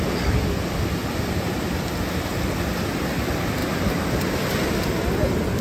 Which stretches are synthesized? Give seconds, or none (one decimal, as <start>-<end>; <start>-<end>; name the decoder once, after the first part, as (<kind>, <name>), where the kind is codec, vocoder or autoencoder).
3.6-4.7 (vocoder, BigVGAN v2)